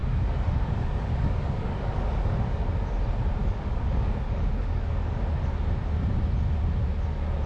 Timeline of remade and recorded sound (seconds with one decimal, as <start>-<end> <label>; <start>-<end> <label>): 0.0-2.7 remade; 2.7-3.4 recorded; 3.4-5.2 remade; 5.2-7.5 recorded